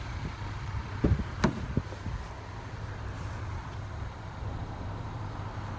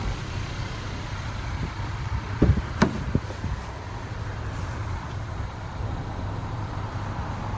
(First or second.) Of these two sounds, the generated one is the second